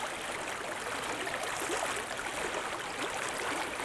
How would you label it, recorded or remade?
remade